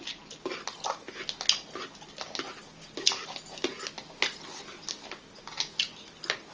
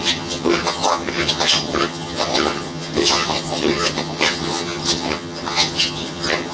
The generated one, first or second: second